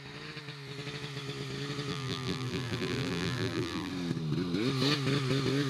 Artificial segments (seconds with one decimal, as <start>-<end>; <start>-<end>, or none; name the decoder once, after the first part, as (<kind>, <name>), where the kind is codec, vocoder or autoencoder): 1.9-3.9 (vocoder, BigVGAN v2)